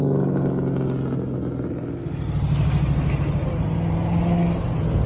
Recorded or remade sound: recorded